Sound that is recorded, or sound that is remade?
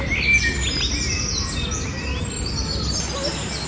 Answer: recorded